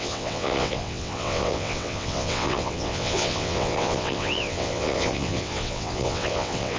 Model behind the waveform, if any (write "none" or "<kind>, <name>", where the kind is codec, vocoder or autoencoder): vocoder, WaveNeXt